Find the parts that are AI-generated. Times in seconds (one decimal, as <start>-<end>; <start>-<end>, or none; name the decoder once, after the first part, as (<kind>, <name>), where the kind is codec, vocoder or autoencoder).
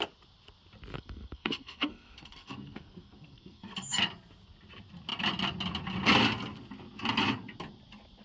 0.9-4.0 (codec, SNAC)